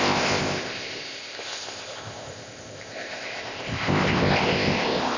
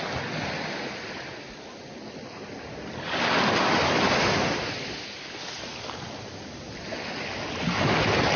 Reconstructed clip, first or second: first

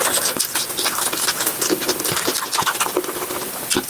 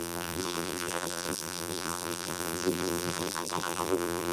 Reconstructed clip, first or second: second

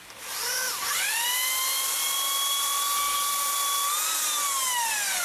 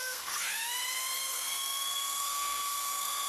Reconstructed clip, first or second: second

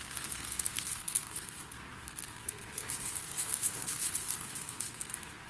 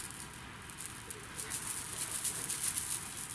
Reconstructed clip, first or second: first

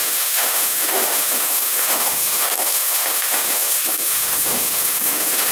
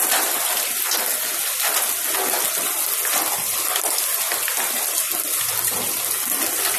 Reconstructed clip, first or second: first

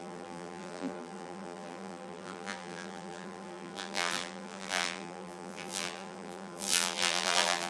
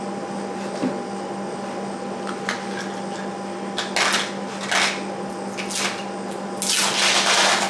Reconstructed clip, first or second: first